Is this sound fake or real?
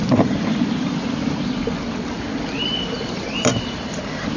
real